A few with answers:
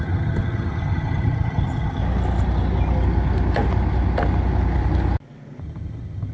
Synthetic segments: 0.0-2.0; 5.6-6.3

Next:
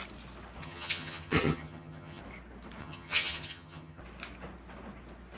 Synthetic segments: 0.6-2.2; 2.8-4.0

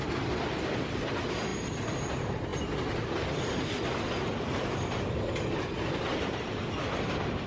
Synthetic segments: none

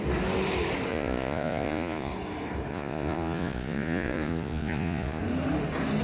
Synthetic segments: 0.9-2.1; 2.7-5.2